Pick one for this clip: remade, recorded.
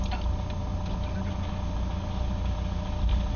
recorded